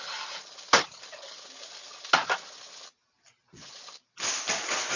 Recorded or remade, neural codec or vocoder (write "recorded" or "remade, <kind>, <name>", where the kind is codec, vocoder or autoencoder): recorded